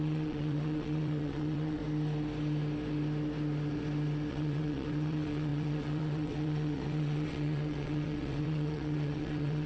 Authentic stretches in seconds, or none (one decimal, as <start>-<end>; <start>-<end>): 1.8-4.3